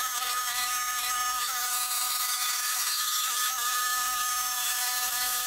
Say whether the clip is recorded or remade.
remade